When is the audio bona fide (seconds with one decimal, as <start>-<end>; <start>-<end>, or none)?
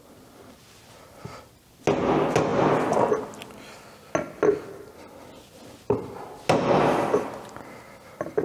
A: 0.0-8.4